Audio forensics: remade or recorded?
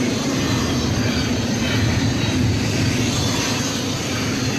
recorded